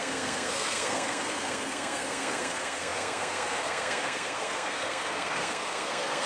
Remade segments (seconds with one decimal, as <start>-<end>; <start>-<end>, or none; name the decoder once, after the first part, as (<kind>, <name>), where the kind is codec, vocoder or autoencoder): 0.0-6.3 (codec, SNAC)